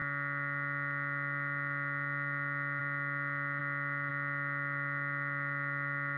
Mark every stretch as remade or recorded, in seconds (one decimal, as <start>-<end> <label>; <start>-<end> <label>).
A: 0.0-6.2 recorded